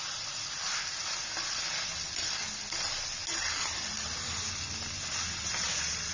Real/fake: real